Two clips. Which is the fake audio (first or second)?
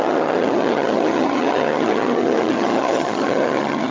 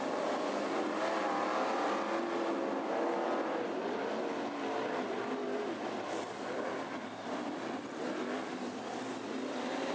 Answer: first